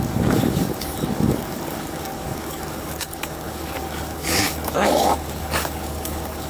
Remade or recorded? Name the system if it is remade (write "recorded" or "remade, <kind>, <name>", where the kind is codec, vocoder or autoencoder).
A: remade, codec, DAC